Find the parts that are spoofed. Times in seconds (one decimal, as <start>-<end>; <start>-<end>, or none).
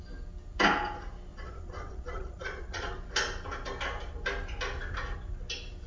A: 1.3-2.9